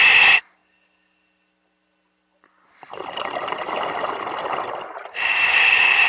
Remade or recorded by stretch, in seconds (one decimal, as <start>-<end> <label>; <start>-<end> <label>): 0.0-6.1 recorded